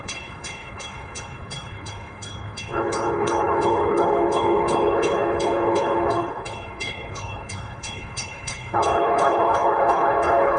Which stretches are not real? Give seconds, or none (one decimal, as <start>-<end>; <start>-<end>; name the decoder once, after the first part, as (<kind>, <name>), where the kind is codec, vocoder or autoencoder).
0.0-10.6 (codec, HILCodec)